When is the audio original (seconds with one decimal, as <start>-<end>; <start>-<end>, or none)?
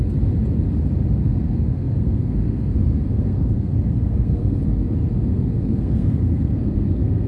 0.0-1.2; 4.6-5.3